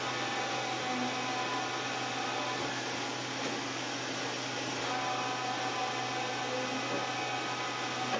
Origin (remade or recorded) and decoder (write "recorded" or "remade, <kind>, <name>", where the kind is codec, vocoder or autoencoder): recorded